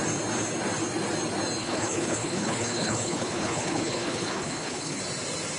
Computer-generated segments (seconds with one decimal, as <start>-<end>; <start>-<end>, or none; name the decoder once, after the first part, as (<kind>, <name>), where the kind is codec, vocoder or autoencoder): 1.6-5.0 (codec, HILCodec)